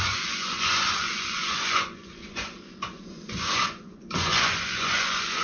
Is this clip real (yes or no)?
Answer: no